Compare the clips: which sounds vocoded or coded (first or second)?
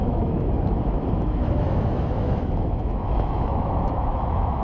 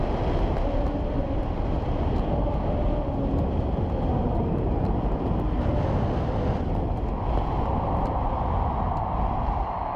first